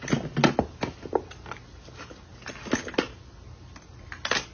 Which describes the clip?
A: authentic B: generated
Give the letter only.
A